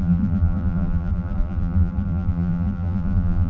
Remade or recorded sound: remade